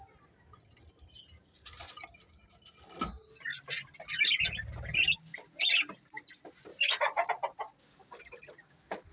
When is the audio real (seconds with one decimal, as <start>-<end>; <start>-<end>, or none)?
0.0-6.7; 7.3-9.1